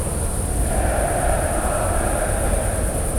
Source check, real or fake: real